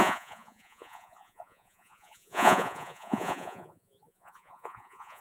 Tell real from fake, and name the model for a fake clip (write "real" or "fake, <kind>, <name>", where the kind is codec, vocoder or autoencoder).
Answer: fake, vocoder, Vocos